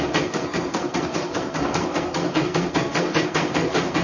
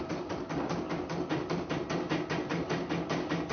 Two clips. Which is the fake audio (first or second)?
first